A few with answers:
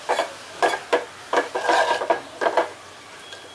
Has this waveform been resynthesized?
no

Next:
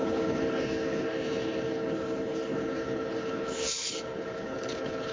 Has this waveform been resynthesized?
yes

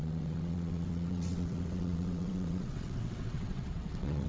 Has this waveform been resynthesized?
yes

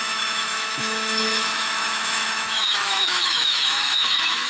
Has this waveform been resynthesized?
yes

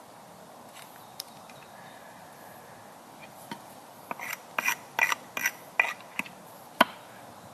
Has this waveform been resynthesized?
no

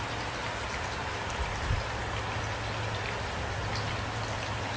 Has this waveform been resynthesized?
no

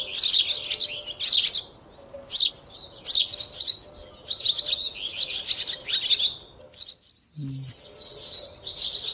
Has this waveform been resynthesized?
no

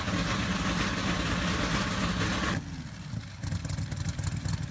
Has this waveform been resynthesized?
no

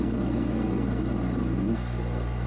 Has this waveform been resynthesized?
yes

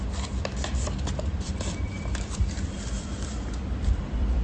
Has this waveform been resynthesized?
yes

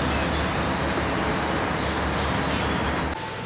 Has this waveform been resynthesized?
no